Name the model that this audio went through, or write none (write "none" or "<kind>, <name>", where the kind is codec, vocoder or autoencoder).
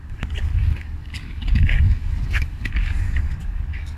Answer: codec, DAC